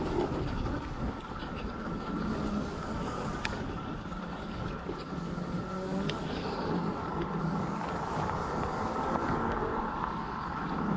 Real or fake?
fake